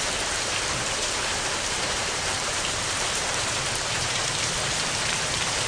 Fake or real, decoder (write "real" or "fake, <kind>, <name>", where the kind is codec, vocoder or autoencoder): fake, vocoder, BigVGAN v2